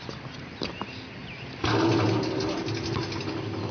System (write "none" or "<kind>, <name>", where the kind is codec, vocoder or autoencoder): none